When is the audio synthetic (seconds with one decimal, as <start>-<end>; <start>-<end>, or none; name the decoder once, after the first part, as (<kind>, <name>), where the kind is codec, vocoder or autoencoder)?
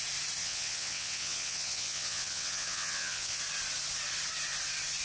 0.4-3.4 (vocoder, WaveNeXt)